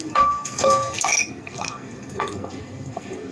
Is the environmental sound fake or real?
fake